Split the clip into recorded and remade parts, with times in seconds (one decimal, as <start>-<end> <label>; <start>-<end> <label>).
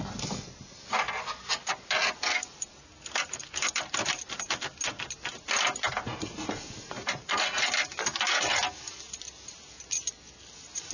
0.0-6.1 recorded; 6.1-7.7 remade; 7.7-10.9 recorded